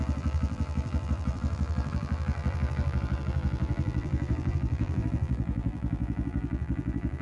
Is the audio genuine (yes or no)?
no